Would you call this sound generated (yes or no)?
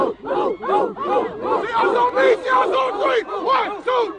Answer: no